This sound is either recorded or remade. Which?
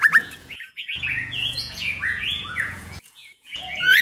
remade